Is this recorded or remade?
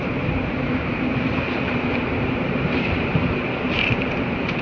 remade